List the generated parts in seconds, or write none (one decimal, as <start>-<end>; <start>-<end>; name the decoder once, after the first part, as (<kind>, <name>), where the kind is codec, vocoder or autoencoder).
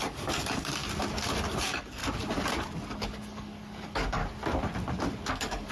0.0-0.8 (codec, DAC); 1.6-2.0; 2.9-4.2; 5.3-5.7